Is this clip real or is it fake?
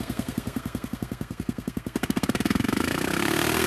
fake